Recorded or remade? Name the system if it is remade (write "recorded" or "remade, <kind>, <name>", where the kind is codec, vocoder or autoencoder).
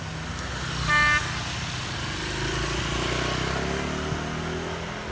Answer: recorded